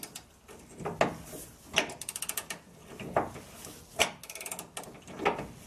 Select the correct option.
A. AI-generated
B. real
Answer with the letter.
B